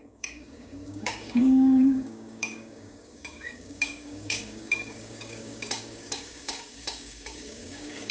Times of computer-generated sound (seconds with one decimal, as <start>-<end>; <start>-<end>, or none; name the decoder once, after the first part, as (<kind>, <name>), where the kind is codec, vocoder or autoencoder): 0.0-8.1 (codec, DAC)